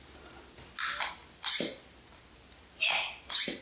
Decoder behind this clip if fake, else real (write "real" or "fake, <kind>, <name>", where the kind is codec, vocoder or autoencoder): real